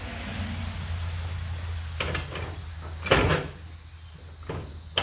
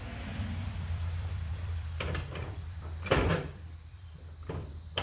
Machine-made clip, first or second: second